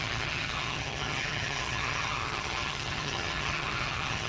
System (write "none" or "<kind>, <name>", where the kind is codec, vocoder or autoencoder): vocoder, HiFi-GAN